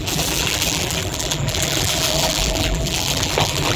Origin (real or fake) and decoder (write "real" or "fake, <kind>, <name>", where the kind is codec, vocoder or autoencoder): fake, vocoder, BigVGAN v2